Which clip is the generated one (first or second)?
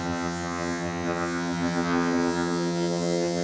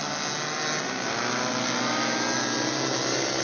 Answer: first